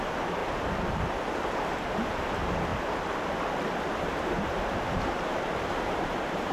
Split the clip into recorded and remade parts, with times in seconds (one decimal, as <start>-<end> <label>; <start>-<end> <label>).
0.0-0.4 remade; 0.4-1.4 recorded; 1.4-2.7 remade; 2.7-4.1 recorded; 4.1-6.5 remade